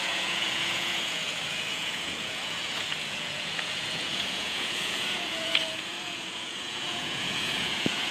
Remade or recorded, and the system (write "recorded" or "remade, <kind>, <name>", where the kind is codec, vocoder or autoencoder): remade, vocoder, Vocos